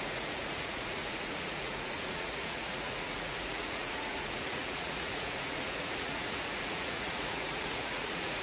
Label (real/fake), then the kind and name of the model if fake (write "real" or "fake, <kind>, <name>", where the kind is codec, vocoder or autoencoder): fake, vocoder, Vocos